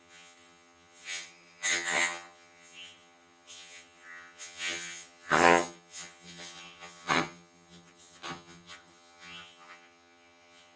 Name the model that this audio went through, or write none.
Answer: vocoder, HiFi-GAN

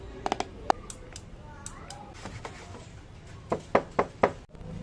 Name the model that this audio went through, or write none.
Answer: none